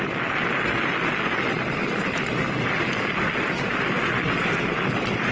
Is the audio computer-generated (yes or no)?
no